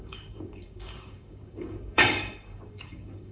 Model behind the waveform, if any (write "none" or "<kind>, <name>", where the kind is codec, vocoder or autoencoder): codec, DAC